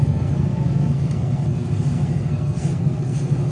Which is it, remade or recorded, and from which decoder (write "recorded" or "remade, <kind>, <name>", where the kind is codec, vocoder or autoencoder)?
remade, codec, SNAC